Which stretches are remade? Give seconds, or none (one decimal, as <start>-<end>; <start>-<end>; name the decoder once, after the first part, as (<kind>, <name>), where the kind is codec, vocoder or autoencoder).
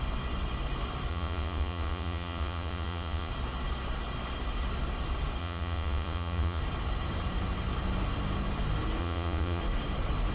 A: 1.1-3.3 (vocoder, Vocos); 5.4-6.6; 9.0-9.6